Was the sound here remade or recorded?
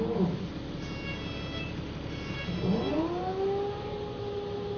recorded